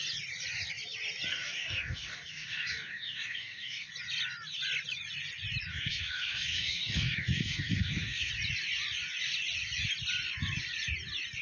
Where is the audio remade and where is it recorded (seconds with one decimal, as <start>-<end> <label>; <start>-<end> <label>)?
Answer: 0.0-1.3 recorded; 1.3-3.9 remade; 3.9-5.7 recorded; 5.7-8.3 remade; 8.3-11.4 recorded